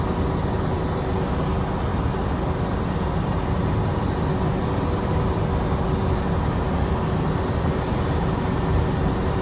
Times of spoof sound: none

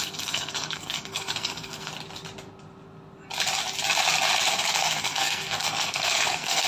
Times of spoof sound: 0.0-1.9 (codec, SNAC); 4.5-6.7

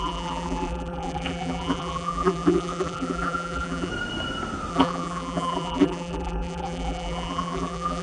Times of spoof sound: 0.0-3.9 (vocoder, BigVGAN v2); 4.7-8.0

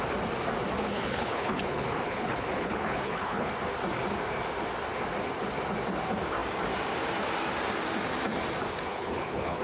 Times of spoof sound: 0.8-3.5 (codec, HILCodec); 8.9-9.6

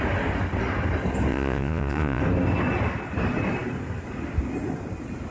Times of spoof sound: 1.3-2.2 (vocoder, Vocos)

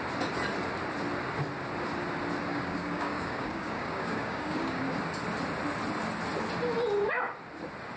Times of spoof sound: 2.5-4.8 (codec, DAC)

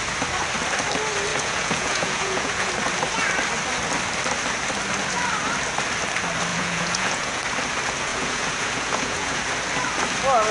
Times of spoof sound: 1.3-2.7 (vocoder, Vocos); 6.5-7.4; 8.1-9.4

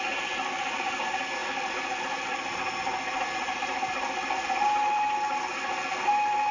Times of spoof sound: none